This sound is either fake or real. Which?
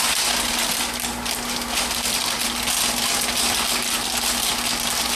real